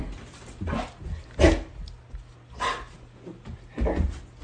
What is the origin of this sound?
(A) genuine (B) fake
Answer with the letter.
A